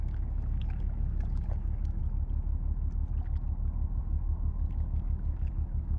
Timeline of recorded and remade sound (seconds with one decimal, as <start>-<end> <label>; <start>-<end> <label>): 0.0-2.0 remade; 2.0-4.0 recorded; 4.0-6.0 remade